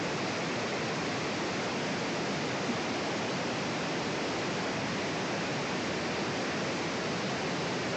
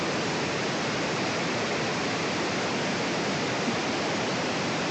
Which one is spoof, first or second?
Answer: second